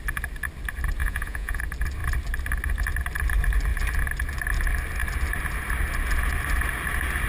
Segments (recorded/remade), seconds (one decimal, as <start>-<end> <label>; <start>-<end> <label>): 0.0-1.0 recorded; 1.0-1.6 remade; 1.6-7.3 recorded